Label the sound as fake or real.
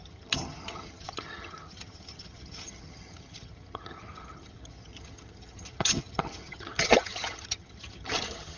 fake